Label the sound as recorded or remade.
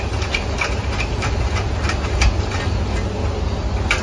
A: recorded